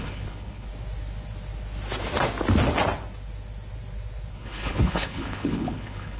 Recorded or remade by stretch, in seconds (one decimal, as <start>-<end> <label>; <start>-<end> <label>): 0.0-0.7 remade; 0.7-4.3 recorded; 4.3-6.2 remade

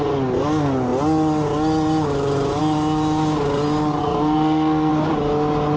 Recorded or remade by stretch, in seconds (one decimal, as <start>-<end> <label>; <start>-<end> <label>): 0.0-4.0 recorded; 4.0-4.9 remade; 4.9-5.8 recorded

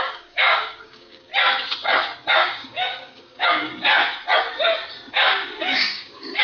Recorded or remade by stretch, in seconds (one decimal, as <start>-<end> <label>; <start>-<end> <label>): 0.0-1.3 remade; 1.3-2.3 recorded; 2.3-3.7 remade; 3.7-5.1 recorded; 5.1-6.4 remade

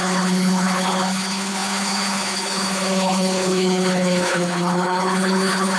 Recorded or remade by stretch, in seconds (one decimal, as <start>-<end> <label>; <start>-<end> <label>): 0.0-5.8 remade

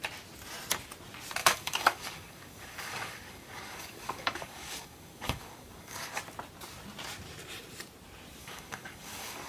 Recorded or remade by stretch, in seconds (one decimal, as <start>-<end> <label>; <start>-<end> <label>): 0.0-1.4 recorded; 1.4-6.2 remade; 6.2-8.4 recorded; 8.4-9.5 remade

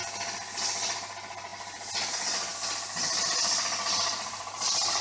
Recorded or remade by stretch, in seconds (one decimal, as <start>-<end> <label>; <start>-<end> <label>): 0.0-5.0 recorded